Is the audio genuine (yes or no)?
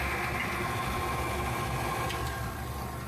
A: yes